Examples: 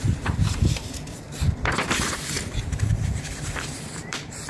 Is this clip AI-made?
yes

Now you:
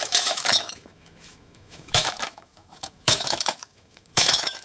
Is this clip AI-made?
yes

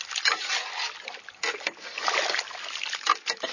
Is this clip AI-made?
no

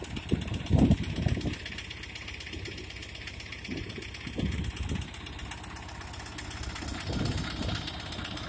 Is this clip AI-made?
no